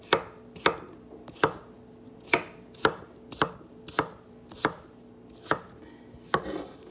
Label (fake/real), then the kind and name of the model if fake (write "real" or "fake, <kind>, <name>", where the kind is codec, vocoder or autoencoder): real